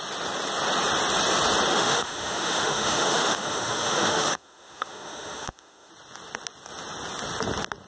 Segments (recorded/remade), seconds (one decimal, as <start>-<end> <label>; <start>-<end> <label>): 0.0-1.7 recorded; 1.7-5.9 remade; 5.9-7.9 recorded